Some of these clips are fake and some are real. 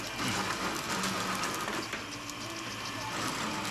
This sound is real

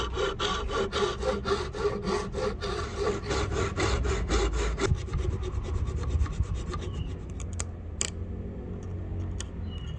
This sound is real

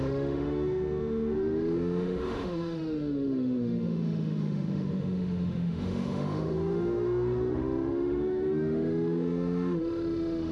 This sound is fake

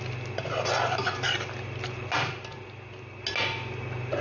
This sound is real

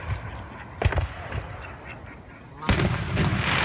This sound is real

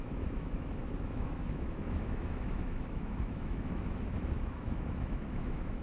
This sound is fake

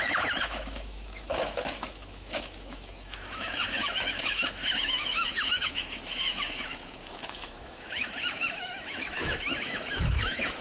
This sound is fake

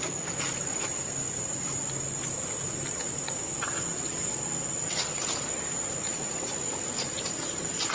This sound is real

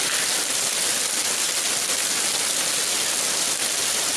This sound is real